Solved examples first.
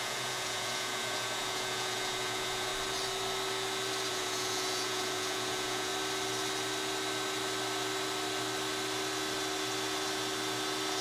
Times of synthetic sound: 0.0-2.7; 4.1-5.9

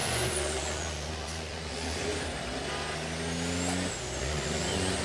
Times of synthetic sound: 0.0-2.1; 4.2-5.0

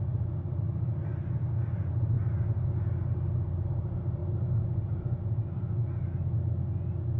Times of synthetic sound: none

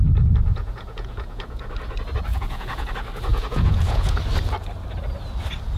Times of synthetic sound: 0.5-1.7; 2.3-2.9; 3.3-4.2

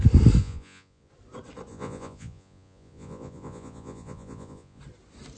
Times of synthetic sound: 0.4-1.1; 1.7-4.8

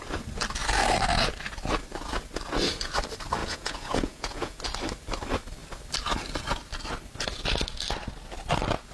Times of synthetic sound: 3.4-4.6